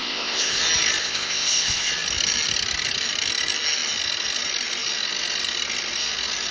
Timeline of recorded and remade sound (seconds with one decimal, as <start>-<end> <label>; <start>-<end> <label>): 0.0-0.6 remade; 0.6-1.0 recorded; 1.0-1.9 remade; 1.9-6.5 recorded